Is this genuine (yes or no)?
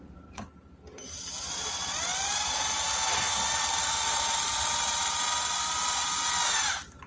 yes